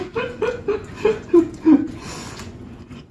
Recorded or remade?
remade